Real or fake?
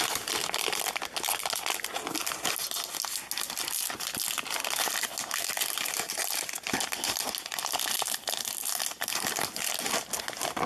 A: real